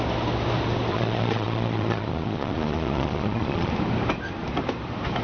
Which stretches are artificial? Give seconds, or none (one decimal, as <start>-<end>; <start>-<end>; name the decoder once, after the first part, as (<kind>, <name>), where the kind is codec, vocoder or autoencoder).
0.9-3.7 (vocoder, Vocos)